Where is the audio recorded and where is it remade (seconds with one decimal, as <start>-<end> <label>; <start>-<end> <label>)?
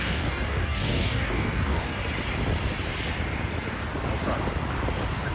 0.0-2.0 remade; 2.0-5.3 recorded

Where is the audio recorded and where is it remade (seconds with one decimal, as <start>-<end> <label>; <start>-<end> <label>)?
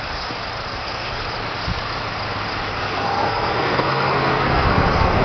0.0-0.7 recorded; 0.7-1.2 remade; 1.2-2.7 recorded; 2.7-5.2 remade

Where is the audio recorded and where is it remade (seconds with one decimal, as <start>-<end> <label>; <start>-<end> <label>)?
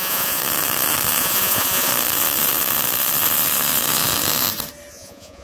0.0-0.4 remade; 0.4-1.2 recorded; 1.2-1.9 remade; 1.9-4.9 recorded; 4.9-5.4 remade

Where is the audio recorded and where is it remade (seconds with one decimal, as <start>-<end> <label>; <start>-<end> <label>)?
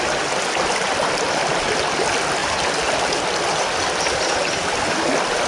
0.0-5.5 recorded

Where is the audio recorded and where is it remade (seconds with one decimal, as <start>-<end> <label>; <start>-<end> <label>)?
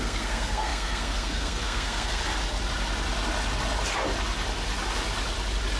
0.0-2.2 remade; 2.2-5.8 recorded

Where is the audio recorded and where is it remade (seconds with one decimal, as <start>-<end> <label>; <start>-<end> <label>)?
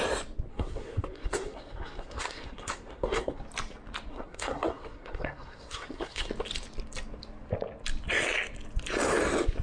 0.0-0.5 recorded; 0.5-3.4 remade; 3.4-4.1 recorded; 4.1-6.3 remade; 6.3-9.6 recorded